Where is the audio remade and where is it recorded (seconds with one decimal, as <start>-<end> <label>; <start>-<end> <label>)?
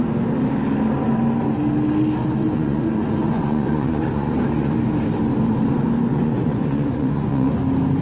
0.0-2.4 recorded; 2.4-4.7 remade; 4.7-6.1 recorded; 6.1-7.5 remade; 7.5-8.0 recorded